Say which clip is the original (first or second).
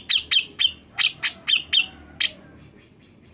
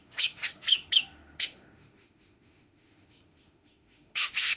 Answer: first